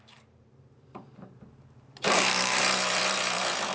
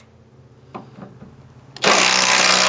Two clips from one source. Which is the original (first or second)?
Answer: second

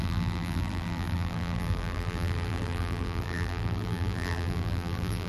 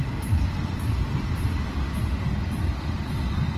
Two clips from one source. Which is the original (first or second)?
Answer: second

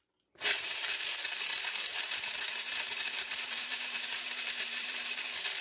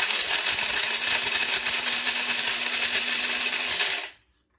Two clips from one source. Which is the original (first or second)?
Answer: second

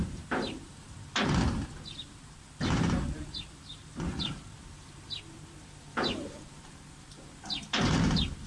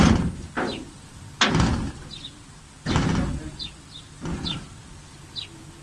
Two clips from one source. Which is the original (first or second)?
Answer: second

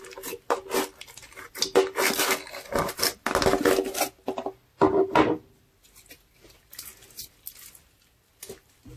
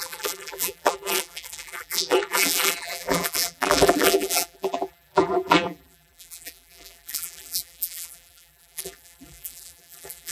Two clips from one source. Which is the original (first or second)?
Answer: first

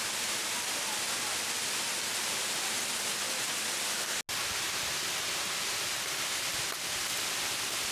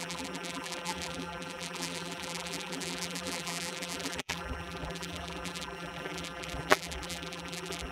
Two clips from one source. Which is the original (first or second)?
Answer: first